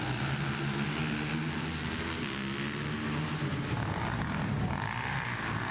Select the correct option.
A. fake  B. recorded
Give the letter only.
B